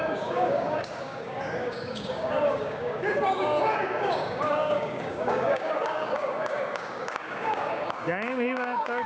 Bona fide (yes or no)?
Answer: no